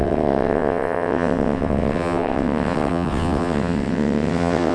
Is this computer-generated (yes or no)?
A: yes